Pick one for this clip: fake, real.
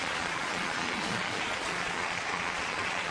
fake